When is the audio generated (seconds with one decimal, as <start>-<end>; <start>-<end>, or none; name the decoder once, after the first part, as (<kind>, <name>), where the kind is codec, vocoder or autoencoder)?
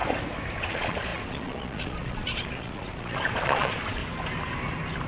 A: 0.6-4.0 (vocoder, Vocos)